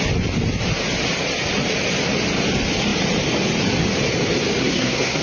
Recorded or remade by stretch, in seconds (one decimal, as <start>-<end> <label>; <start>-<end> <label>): 0.0-4.6 recorded; 4.6-5.2 remade